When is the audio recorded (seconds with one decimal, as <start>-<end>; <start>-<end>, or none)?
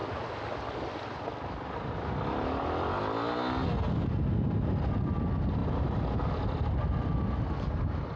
0.0-8.2